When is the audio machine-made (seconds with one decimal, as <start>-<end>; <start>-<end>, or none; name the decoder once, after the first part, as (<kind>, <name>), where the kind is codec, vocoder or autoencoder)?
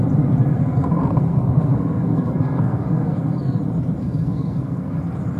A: 0.5-3.6 (codec, SNAC); 4.0-5.0